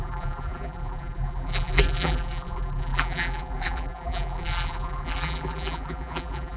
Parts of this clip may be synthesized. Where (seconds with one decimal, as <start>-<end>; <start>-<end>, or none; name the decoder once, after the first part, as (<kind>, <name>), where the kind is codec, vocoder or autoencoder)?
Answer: 0.0-6.6 (vocoder, BigVGAN v2)